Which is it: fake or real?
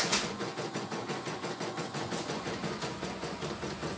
fake